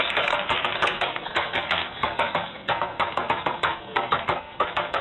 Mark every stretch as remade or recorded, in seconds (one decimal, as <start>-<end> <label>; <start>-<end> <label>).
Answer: 0.0-5.0 remade